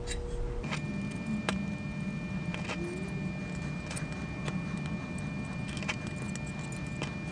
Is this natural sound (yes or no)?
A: yes